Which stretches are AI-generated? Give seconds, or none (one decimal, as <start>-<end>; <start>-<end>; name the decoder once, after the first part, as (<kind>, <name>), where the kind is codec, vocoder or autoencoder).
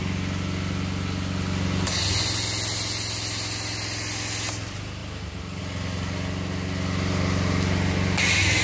none